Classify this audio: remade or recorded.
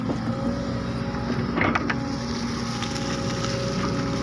recorded